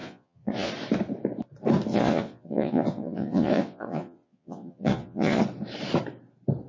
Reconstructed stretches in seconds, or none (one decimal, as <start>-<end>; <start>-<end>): 0.0-0.7; 1.9-5.4